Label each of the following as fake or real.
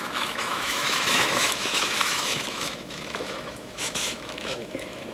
fake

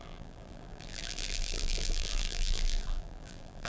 fake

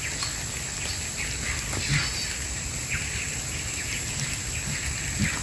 real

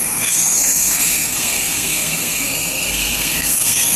fake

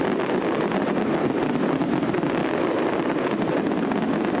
real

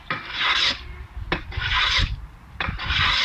fake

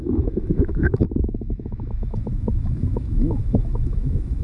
fake